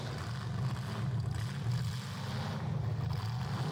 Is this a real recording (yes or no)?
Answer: yes